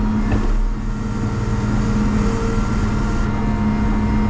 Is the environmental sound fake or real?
real